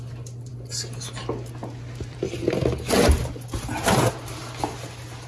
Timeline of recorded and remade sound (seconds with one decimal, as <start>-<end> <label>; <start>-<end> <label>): 0.0-5.3 recorded